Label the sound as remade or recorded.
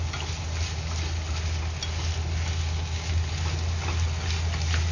recorded